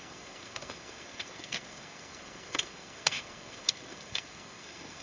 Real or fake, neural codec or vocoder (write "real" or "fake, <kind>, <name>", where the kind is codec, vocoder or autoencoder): fake, codec, SNAC